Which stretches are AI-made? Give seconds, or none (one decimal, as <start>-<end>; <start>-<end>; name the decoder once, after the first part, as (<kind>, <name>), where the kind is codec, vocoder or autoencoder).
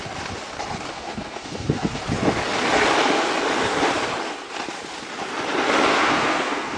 0.9-2.0 (codec, SNAC); 5.9-6.8